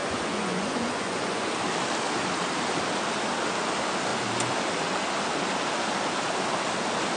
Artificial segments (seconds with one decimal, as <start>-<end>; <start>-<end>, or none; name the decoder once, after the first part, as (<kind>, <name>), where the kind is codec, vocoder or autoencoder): 0.0-1.5 (vocoder, Vocos)